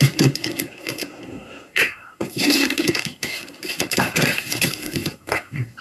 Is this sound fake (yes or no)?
yes